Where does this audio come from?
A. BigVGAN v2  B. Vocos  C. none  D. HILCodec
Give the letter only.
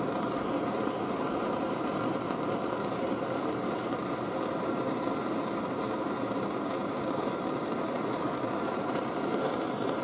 A